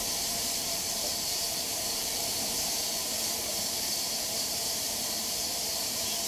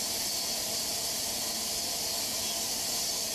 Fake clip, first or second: first